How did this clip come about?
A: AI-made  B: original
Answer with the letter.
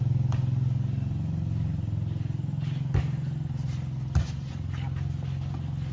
B